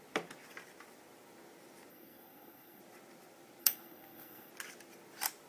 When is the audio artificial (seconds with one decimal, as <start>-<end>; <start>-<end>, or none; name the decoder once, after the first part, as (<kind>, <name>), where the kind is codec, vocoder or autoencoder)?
1.9-2.8 (codec, SNAC); 3.6-4.5